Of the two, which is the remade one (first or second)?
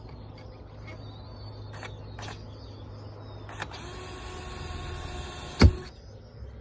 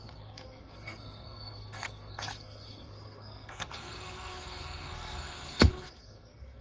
second